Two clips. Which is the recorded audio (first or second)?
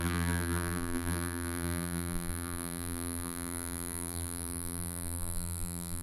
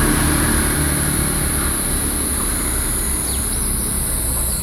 second